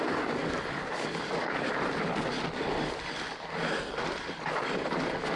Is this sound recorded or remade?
recorded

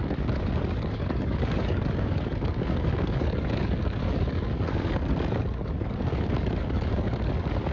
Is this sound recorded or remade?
remade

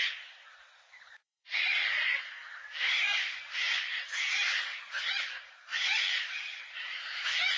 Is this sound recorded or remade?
recorded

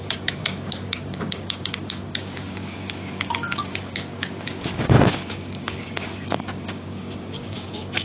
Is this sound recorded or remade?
remade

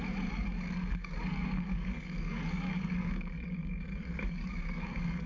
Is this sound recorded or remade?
remade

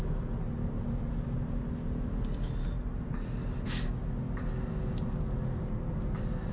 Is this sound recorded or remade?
recorded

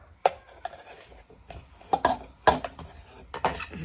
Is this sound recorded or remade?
recorded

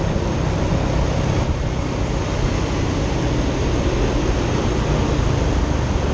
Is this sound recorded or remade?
recorded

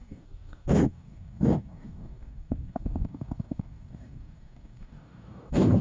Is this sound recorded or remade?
remade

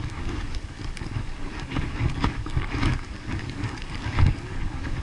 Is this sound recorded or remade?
remade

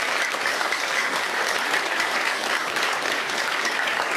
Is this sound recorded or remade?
remade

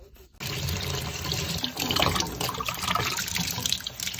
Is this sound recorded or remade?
recorded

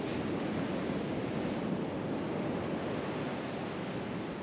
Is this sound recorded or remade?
recorded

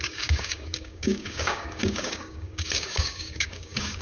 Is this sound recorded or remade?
remade